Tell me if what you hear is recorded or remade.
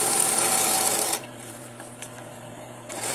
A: remade